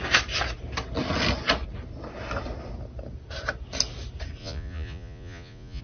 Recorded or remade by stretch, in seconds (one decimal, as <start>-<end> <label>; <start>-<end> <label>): 0.0-4.4 recorded; 4.4-5.8 remade